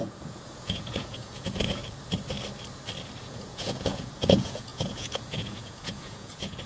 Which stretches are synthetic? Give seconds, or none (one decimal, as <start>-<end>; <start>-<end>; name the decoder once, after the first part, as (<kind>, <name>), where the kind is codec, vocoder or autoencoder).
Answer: 0.0-1.8 (vocoder, Vocos); 3.2-6.7